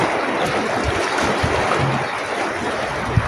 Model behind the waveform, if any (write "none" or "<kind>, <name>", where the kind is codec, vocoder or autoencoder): none